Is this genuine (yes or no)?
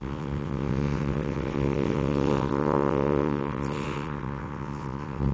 no